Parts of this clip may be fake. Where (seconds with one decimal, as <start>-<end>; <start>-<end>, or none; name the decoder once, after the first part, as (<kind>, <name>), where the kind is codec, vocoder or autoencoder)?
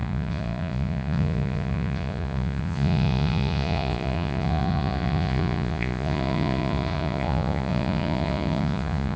0.0-9.2 (vocoder, Vocos)